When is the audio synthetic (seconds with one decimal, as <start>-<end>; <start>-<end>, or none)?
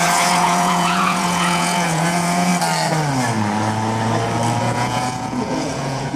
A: 0.0-2.5; 4.6-6.2